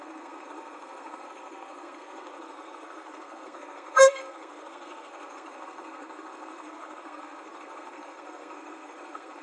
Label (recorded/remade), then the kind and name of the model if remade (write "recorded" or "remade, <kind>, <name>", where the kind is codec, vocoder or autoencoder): remade, codec, SNAC